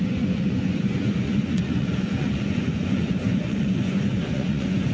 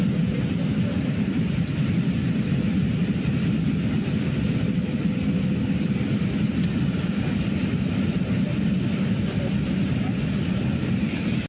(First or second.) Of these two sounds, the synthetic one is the first